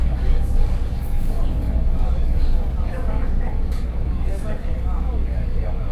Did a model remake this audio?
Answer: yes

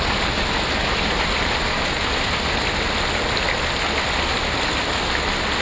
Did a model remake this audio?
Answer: no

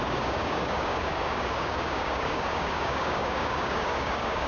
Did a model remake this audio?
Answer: yes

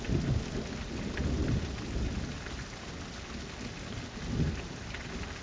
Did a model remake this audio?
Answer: no